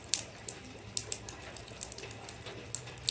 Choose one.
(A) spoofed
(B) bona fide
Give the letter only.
B